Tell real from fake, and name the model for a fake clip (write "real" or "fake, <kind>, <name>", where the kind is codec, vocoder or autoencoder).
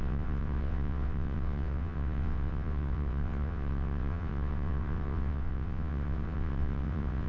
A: fake, vocoder, WaveNeXt